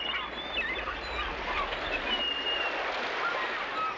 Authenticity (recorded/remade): recorded